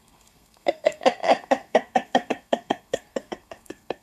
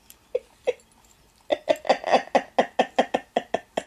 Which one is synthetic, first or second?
first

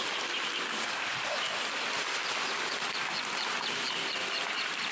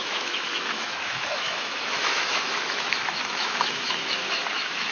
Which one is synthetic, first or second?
second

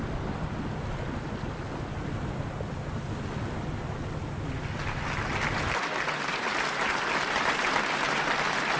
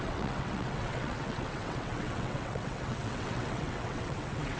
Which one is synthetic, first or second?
second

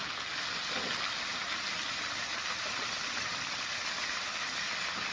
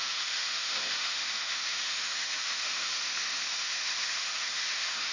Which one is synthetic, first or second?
second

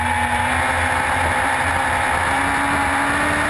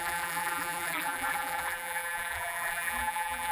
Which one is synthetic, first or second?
second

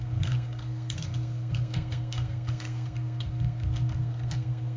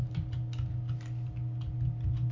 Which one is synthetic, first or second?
first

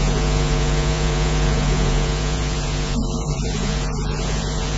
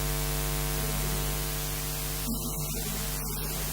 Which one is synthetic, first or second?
first